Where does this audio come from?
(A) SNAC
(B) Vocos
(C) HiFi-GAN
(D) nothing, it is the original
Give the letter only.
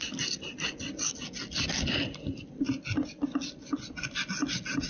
D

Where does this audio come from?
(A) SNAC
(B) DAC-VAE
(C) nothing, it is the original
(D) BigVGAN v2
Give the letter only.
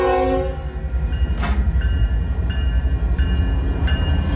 C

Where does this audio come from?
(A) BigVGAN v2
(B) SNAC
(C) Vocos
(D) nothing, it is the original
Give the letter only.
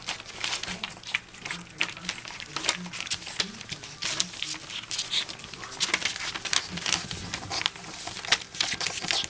D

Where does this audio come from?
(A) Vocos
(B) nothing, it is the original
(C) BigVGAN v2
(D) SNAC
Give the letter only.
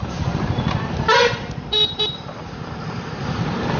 C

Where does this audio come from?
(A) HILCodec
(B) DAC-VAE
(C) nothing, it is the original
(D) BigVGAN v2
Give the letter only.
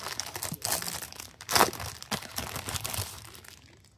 C